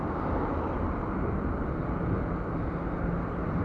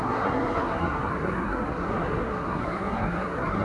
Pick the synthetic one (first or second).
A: second